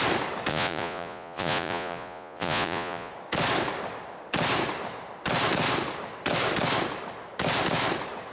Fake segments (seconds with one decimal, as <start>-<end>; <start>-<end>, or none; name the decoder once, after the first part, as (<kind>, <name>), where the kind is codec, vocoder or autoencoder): 0.5-3.1 (vocoder, Vocos)